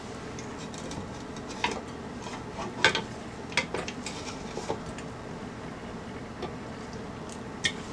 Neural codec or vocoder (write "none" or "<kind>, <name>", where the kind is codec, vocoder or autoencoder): none